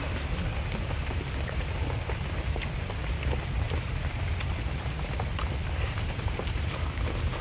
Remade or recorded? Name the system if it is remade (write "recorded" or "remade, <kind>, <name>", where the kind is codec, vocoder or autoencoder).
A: recorded